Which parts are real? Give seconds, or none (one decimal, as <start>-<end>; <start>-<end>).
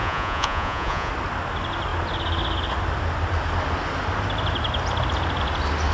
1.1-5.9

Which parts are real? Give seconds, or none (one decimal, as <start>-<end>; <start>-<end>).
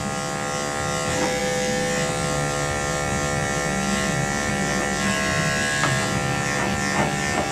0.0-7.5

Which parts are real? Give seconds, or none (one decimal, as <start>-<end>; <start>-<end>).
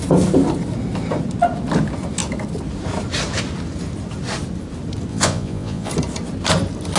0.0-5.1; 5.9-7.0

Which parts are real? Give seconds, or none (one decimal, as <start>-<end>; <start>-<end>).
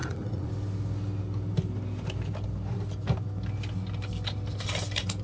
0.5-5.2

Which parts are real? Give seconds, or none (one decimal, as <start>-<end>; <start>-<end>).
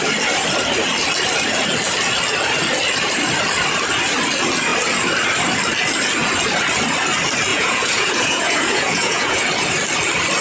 0.0-7.5; 9.4-10.4